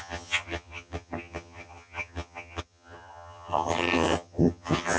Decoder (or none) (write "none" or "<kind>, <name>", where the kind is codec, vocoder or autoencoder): vocoder, HiFi-GAN